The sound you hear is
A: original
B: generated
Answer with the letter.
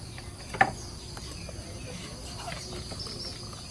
A